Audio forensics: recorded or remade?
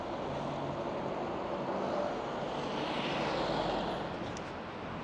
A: recorded